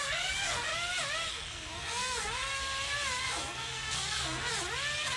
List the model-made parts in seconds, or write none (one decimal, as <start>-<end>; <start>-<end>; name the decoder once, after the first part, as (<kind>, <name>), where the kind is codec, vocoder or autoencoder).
0.0-0.7 (codec, SNAC); 1.3-2.6; 3.2-4.5